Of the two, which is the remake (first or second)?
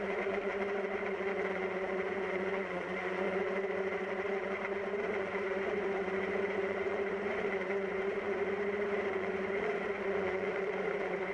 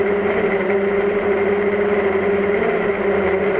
first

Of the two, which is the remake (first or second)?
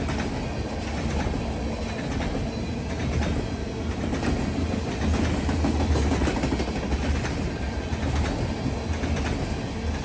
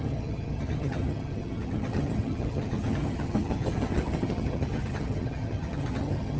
second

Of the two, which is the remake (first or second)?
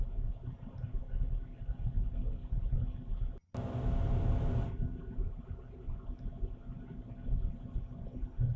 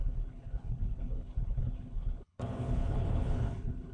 second